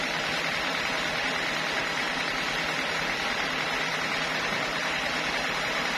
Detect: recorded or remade remade